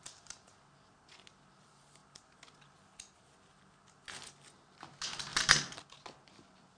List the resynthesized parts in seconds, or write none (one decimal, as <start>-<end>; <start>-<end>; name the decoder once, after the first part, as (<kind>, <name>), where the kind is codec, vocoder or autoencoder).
none